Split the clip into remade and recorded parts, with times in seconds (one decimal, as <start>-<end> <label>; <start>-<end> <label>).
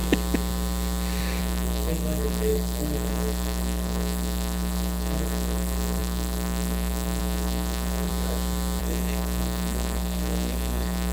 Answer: 0.0-1.4 recorded; 1.4-8.1 remade; 8.1-8.8 recorded; 8.8-11.1 remade